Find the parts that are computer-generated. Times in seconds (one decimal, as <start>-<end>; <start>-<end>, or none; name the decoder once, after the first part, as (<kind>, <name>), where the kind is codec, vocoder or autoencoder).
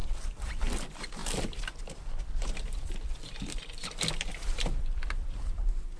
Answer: none